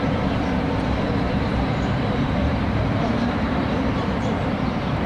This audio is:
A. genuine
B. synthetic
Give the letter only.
B